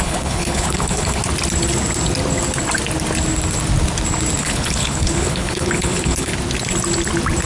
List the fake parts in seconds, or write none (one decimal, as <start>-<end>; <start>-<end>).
0.0-1.2; 4.4-6.3